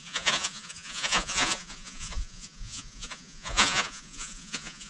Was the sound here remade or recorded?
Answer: remade